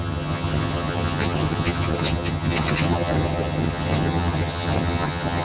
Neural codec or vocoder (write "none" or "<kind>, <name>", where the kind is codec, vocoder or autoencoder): vocoder, HiFi-GAN